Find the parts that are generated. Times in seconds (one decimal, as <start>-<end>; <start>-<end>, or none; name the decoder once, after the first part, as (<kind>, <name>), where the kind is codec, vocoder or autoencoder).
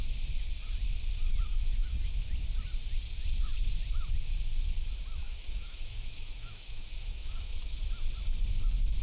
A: 1.5-2.3 (autoencoder, DAC-VAE); 5.2-7.8